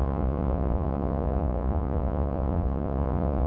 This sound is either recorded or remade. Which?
remade